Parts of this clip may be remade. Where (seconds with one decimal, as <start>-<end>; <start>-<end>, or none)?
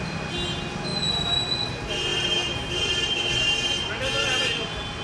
none